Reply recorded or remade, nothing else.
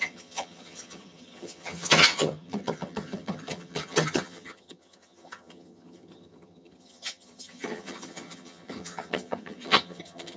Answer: remade